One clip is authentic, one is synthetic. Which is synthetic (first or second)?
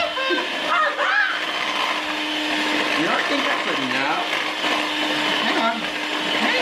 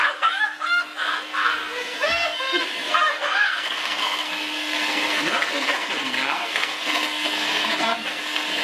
second